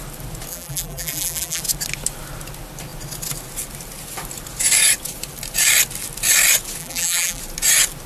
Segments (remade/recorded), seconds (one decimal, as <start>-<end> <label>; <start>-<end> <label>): 0.0-0.5 recorded; 0.5-1.6 remade; 1.6-6.8 recorded; 6.8-7.4 remade; 7.4-8.1 recorded

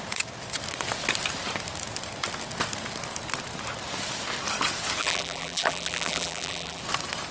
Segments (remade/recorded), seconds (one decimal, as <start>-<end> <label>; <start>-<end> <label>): 0.0-5.0 recorded; 5.0-6.8 remade; 6.8-7.3 recorded

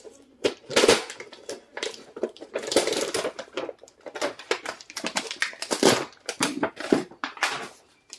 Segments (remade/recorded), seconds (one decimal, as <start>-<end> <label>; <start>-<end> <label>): 0.0-8.2 remade

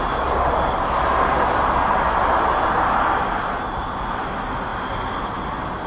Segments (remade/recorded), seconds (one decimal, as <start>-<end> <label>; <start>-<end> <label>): 0.0-5.9 recorded

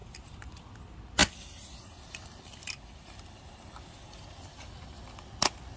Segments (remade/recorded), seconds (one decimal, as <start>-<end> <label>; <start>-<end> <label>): 0.0-0.5 remade; 0.5-1.2 recorded; 1.2-4.7 remade; 4.7-5.8 recorded

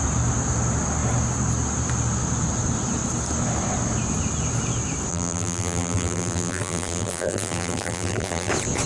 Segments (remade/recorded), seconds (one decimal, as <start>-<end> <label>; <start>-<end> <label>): 0.0-5.1 recorded; 5.1-8.5 remade; 8.5-8.9 recorded